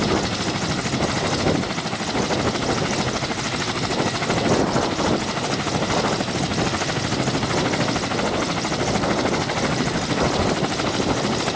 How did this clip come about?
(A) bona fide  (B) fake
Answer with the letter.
A